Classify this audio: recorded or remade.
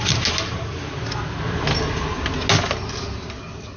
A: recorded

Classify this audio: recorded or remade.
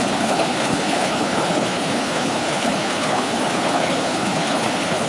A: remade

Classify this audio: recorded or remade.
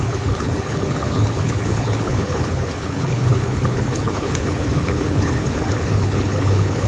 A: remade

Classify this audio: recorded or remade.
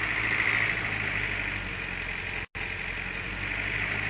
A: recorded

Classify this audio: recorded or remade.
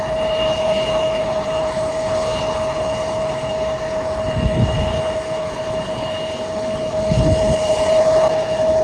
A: remade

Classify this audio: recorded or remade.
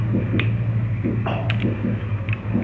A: recorded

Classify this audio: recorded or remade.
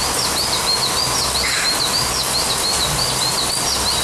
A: recorded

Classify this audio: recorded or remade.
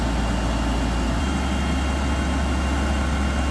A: recorded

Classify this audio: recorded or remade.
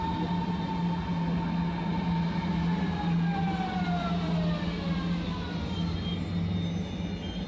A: recorded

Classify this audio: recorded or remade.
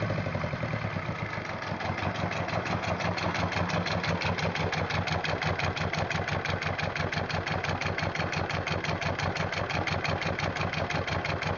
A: recorded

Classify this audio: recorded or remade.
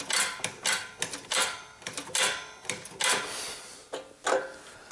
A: recorded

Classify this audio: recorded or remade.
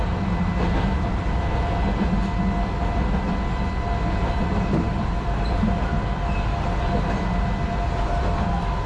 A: recorded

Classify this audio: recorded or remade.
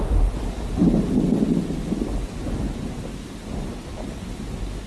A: recorded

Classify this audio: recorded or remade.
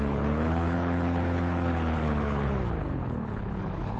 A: remade